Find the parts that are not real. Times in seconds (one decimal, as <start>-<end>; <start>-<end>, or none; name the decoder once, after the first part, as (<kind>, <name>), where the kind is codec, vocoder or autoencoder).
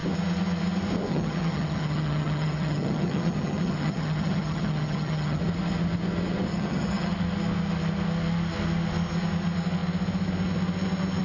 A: 1.1-5.4 (vocoder, HiFi-GAN); 6.5-7.1